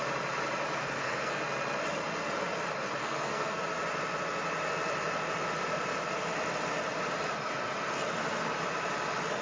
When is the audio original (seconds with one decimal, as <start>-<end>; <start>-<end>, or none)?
0.0-0.8; 1.4-3.0; 3.6-9.4